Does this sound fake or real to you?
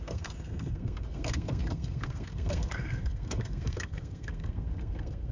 fake